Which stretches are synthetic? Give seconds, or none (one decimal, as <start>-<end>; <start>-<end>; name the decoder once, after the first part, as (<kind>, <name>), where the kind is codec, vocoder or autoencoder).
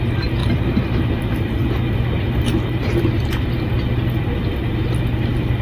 0.4-1.0 (vocoder, BigVGAN v2); 2.8-3.4